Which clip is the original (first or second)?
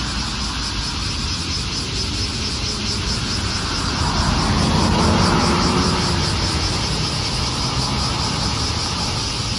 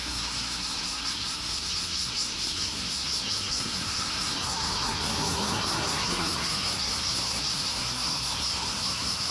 first